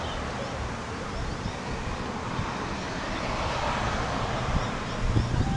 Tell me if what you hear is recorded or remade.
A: recorded